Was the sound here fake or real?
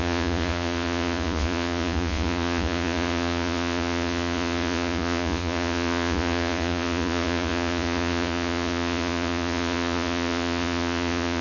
fake